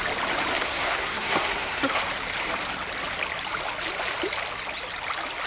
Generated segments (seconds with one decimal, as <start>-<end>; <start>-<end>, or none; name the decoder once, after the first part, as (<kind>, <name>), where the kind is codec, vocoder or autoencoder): 0.5-2.0 (codec, SNAC)